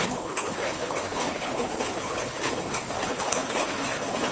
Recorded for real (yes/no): no